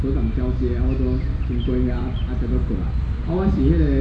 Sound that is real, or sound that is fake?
real